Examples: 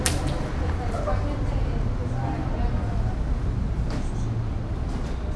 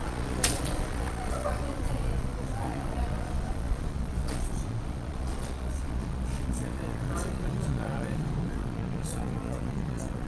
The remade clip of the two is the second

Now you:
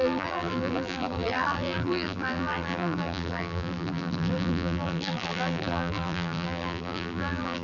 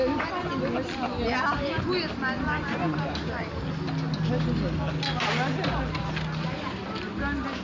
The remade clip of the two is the first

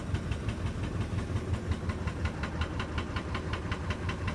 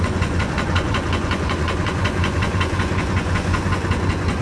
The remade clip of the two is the second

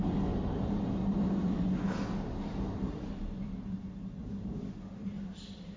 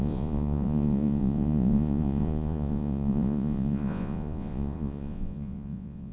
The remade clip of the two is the second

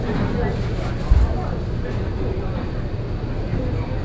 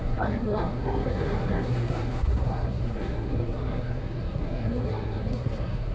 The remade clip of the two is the second